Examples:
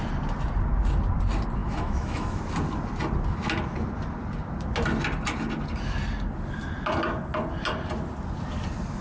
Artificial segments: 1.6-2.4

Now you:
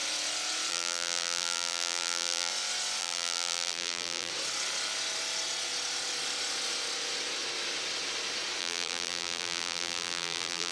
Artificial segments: 0.7-2.5; 3.0-4.3; 8.6-10.7

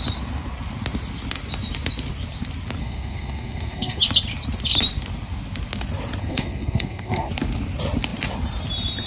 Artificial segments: 2.8-4.0; 6.2-7.3